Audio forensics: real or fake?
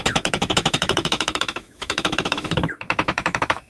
fake